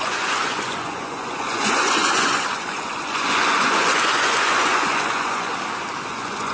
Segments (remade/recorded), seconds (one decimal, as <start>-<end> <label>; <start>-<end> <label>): 0.0-5.5 remade; 5.5-6.1 recorded; 6.1-6.5 remade